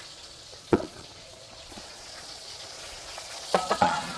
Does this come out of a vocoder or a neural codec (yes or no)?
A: yes